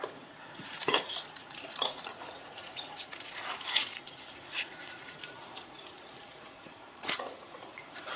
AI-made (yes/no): yes